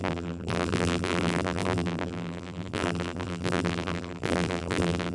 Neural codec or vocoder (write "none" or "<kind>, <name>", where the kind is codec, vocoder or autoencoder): vocoder, BigVGAN v2